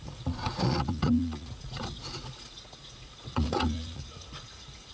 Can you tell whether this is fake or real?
fake